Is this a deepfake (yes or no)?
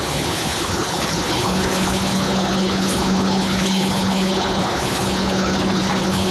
yes